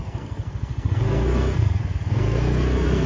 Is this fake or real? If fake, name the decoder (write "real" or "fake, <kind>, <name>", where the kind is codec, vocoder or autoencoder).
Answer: fake, codec, SNAC